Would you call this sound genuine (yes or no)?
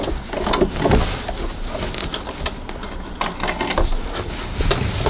yes